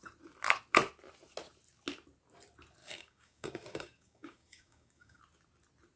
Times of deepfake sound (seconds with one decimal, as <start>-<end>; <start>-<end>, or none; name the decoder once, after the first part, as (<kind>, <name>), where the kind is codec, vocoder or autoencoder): 2.8-5.2 (codec, DAC)